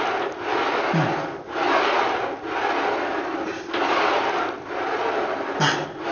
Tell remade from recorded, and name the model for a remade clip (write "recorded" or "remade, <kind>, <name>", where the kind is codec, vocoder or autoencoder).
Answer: recorded